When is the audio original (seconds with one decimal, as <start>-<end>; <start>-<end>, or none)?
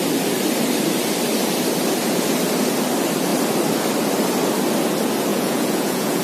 0.0-5.3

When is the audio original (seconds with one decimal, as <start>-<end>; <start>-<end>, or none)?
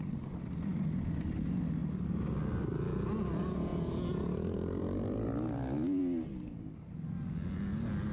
0.0-8.1